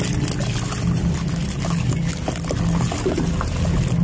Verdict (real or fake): real